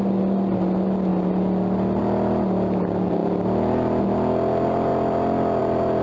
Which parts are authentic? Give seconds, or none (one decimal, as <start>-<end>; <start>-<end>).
0.0-6.0